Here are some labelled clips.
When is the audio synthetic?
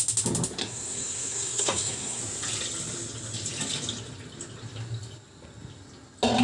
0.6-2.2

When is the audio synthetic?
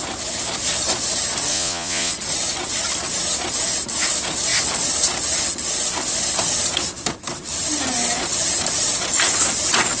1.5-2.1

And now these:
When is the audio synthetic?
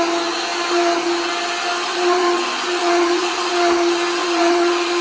1.9-3.5; 4.2-5.0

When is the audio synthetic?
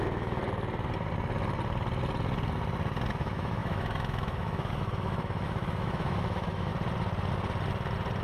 0.0-0.4; 3.1-6.7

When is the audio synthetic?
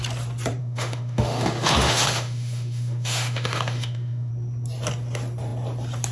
0.6-4.3